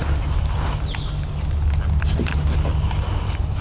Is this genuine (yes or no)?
yes